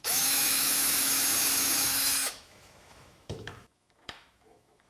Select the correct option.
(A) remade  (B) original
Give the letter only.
A